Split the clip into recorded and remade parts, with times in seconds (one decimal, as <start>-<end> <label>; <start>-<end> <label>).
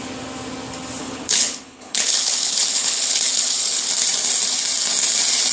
0.0-1.0 recorded; 1.0-3.9 remade; 3.9-5.5 recorded